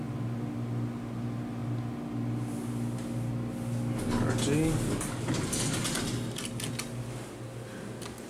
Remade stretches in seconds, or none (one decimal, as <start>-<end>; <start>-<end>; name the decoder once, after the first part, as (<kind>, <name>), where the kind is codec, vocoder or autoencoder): none